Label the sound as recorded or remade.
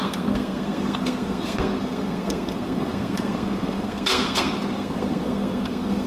remade